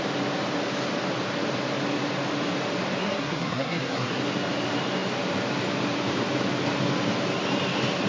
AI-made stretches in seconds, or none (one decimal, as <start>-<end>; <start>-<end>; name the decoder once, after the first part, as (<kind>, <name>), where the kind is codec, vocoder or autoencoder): 3.0-4.2 (codec, SNAC)